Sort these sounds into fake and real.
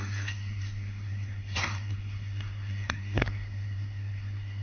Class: fake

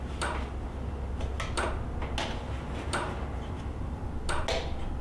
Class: real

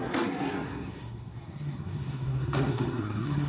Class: fake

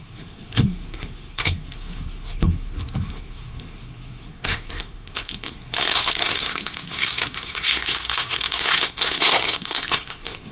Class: fake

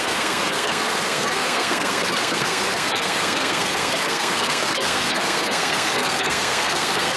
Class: fake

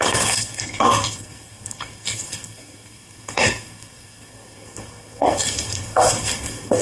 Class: fake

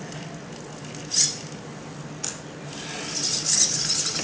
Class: real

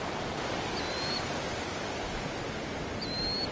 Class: real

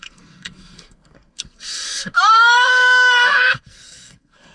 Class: fake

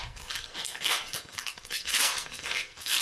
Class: fake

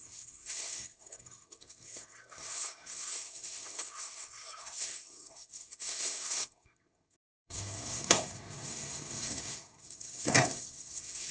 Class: fake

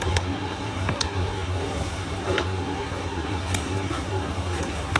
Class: fake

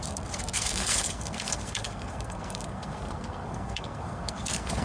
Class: fake